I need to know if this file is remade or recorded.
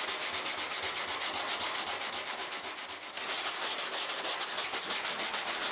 recorded